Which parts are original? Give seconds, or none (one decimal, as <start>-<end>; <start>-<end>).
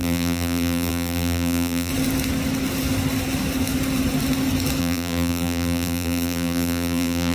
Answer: 1.9-4.8